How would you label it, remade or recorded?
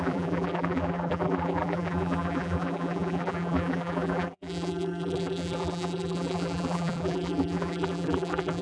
remade